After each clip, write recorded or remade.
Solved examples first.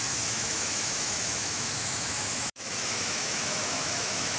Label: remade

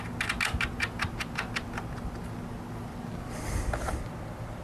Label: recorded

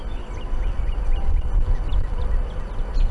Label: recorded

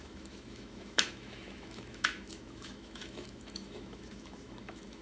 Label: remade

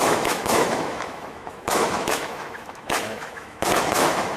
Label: remade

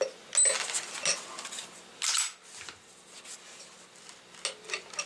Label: recorded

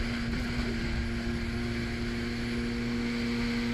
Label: recorded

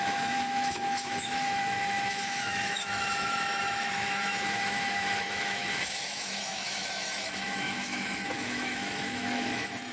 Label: remade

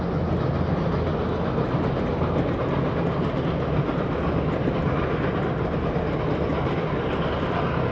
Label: recorded